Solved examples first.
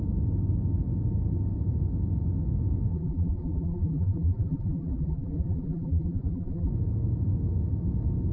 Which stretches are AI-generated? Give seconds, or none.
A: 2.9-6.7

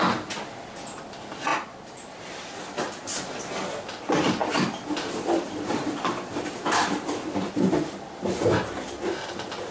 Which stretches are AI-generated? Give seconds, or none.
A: 4.4-7.5

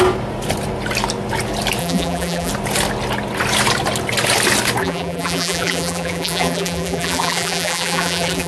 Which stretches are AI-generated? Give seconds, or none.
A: 1.8-2.5; 4.8-8.5

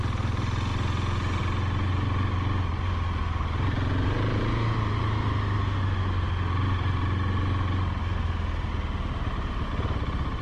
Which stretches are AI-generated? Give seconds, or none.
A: none

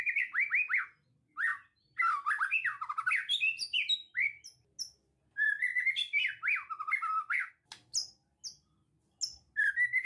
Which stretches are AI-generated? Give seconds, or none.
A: none

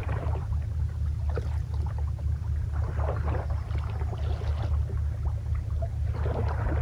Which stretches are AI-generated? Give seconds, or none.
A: 0.0-0.8

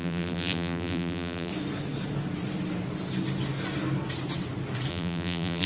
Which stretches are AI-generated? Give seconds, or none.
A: 0.0-1.5; 4.9-5.7

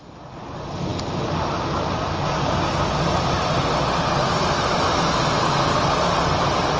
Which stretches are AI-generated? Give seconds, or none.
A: none